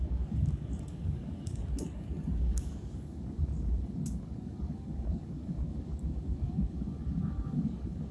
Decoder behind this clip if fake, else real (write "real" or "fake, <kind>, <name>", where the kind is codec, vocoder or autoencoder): fake, codec, DAC